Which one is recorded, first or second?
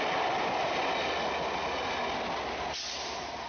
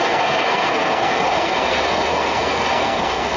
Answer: first